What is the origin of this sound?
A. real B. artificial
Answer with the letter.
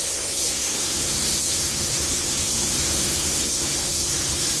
B